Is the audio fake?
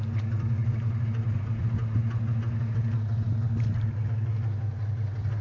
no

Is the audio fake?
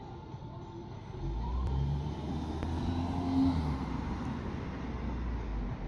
no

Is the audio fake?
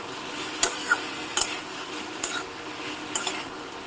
no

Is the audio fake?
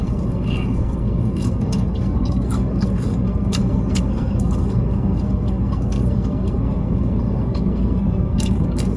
yes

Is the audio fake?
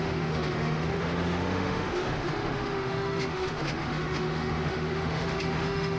yes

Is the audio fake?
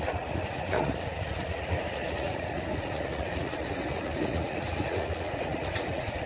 yes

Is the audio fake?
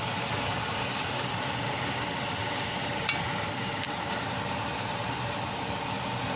no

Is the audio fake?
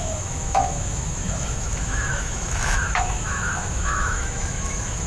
yes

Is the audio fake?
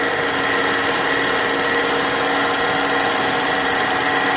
no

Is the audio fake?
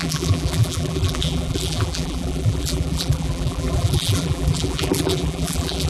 yes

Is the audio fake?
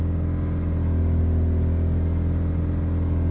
no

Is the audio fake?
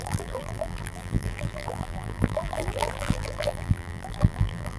yes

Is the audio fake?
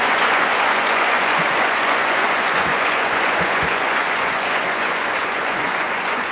yes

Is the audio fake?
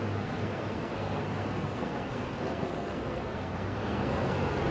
yes